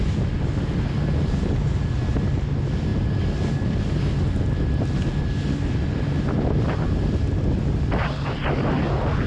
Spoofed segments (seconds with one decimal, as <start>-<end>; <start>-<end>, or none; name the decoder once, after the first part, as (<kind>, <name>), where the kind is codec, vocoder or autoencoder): none